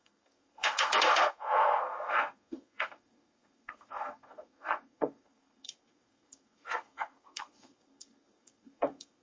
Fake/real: fake